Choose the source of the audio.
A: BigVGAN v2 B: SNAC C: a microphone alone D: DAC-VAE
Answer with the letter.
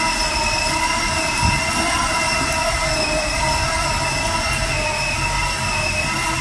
C